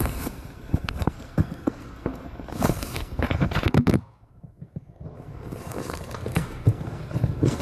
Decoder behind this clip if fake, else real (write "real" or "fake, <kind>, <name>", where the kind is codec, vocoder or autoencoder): fake, codec, SNAC